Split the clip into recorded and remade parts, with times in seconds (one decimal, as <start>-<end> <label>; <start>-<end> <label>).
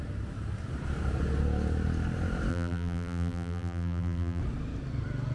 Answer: 0.0-2.5 recorded; 2.5-4.4 remade; 4.4-5.3 recorded